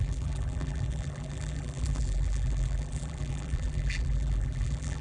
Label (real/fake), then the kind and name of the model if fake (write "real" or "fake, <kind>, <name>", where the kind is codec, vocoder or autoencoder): fake, vocoder, BigVGAN v2